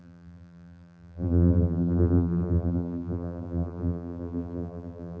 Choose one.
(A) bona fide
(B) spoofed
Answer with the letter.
B